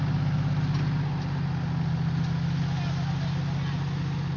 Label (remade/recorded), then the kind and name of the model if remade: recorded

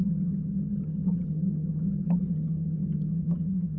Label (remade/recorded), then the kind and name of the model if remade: remade, vocoder, HiFi-GAN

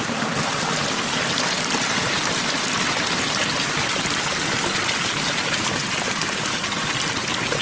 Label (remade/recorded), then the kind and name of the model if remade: recorded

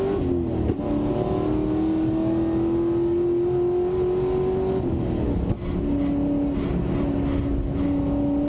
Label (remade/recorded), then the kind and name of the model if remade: recorded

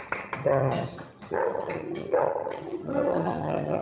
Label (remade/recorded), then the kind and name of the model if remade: remade, vocoder, HiFi-GAN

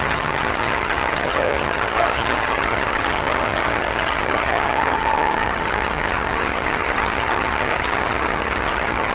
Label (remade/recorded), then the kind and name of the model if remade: remade, vocoder, HiFi-GAN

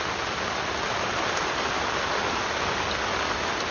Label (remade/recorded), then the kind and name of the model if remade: recorded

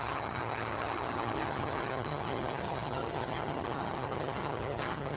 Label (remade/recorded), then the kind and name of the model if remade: remade, vocoder, HiFi-GAN